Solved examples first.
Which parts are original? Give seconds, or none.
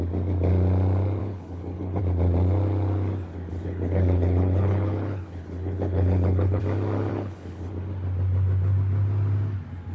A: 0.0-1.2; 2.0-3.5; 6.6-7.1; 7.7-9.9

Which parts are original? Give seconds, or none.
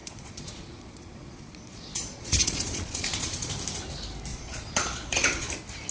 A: 3.5-4.3; 5.5-5.9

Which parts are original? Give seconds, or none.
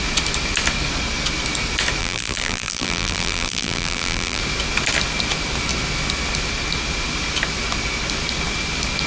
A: 0.0-2.0; 4.4-9.1